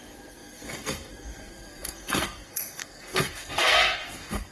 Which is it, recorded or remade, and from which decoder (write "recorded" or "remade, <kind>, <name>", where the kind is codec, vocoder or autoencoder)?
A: remade, codec, SNAC